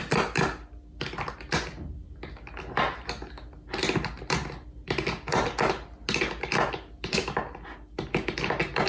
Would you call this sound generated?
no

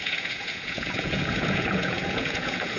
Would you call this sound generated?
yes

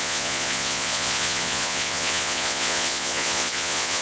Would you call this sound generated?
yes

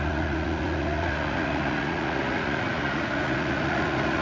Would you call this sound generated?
yes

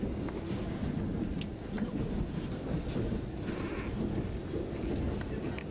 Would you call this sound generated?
no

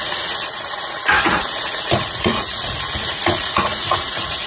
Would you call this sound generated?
yes